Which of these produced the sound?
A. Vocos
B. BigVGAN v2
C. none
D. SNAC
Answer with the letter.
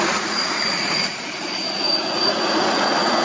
A